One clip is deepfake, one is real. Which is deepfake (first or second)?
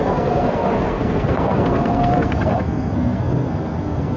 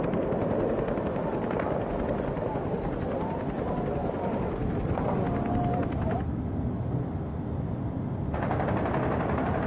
first